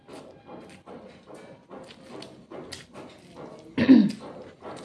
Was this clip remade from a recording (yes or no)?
no